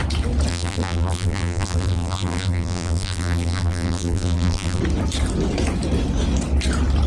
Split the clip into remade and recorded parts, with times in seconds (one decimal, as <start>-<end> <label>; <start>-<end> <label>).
0.0-0.5 recorded; 0.5-4.8 remade; 4.8-7.1 recorded